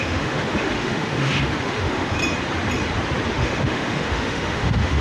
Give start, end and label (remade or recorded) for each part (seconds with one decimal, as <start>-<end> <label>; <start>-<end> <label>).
0.0-2.2 remade; 2.2-3.3 recorded; 3.3-5.0 remade